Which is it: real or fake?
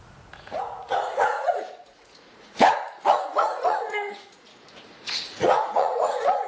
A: fake